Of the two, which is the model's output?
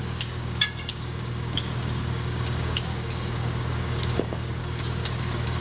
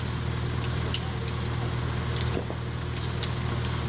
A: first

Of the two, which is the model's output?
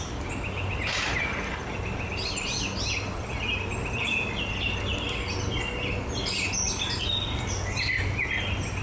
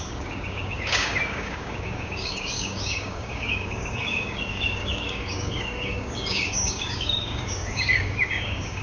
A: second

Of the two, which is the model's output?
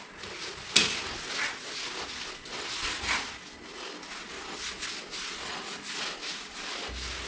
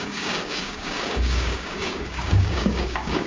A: second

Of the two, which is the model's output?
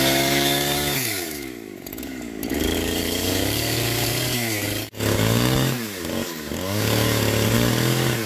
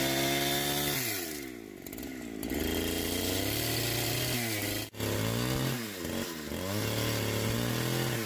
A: first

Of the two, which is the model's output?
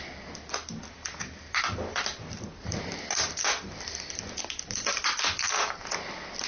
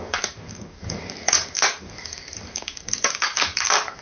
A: second